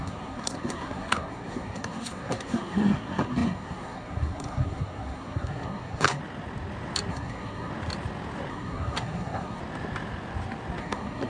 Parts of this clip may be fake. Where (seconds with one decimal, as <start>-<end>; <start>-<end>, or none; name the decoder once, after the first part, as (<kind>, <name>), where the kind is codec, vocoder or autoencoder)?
0.0-6.2 (codec, SNAC); 7.1-7.7; 8.5-9.6; 10.8-11.3

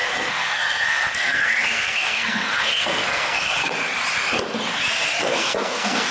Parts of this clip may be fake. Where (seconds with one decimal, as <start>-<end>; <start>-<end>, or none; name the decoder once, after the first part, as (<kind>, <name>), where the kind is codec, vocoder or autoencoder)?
0.0-3.7 (codec, SNAC); 5.2-6.1